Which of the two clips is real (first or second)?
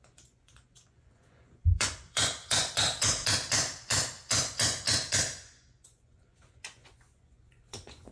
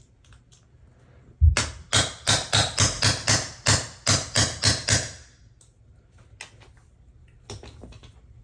second